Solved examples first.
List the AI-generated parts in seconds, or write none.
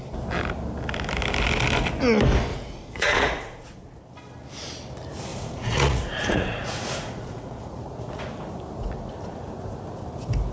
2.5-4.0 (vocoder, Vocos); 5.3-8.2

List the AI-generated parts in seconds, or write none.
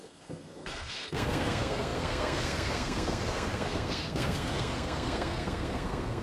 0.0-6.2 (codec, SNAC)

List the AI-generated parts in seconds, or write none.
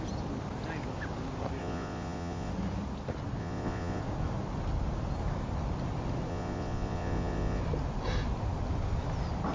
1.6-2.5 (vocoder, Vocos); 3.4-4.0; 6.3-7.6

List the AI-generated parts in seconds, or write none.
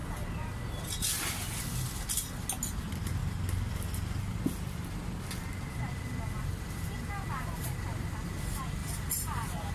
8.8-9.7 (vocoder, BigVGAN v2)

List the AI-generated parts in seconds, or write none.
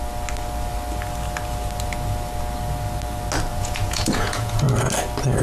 3.5-4.6 (vocoder, Vocos)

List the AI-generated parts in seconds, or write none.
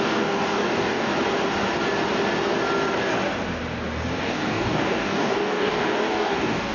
0.0-1.1 (codec, DAC); 4.2-6.7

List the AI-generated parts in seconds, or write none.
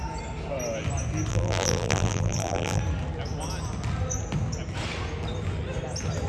1.3-2.8 (vocoder, BigVGAN v2)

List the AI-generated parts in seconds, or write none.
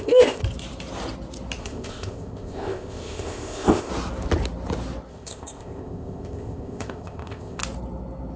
0.0-0.4 (codec, ZipCodec); 1.6-3.9; 5.1-7.6